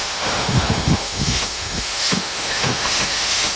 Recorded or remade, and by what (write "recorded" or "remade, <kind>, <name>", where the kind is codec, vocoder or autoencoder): remade, autoencoder, DAC-VAE